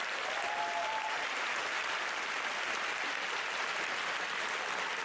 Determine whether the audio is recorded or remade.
recorded